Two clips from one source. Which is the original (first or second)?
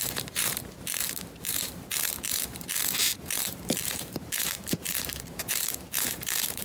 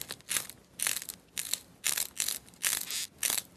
second